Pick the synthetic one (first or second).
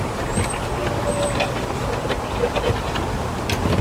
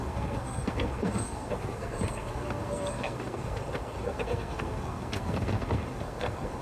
second